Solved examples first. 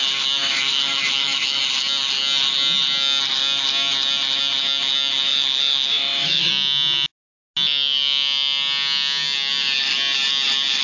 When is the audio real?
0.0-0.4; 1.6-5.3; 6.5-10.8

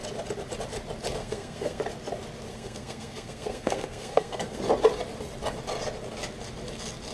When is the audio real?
0.0-1.2; 1.8-2.5; 4.6-7.1